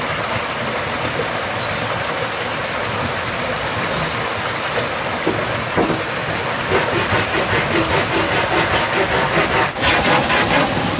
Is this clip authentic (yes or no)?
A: yes